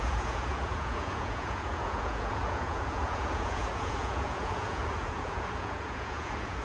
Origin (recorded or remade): remade